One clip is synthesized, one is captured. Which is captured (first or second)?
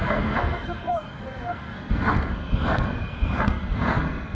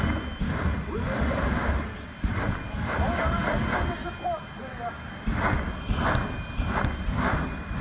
second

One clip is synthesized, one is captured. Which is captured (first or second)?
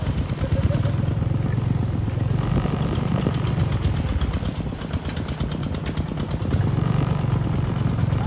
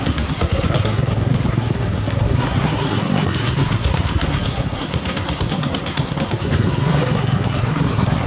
first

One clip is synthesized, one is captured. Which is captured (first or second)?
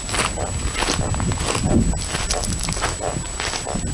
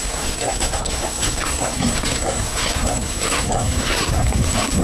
first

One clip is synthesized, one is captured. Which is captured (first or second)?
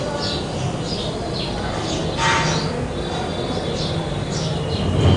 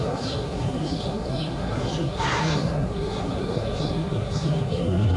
first